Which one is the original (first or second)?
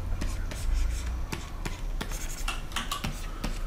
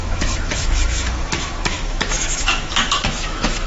first